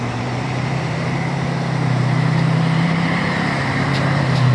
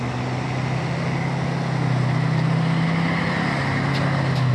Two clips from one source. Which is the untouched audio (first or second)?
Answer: second